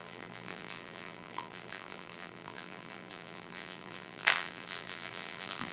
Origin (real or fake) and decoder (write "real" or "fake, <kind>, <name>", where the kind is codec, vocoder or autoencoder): fake, vocoder, BigVGAN v2